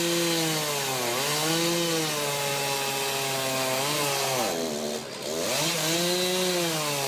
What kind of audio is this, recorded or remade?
recorded